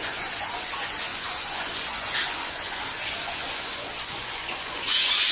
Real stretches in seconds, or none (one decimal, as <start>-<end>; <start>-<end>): none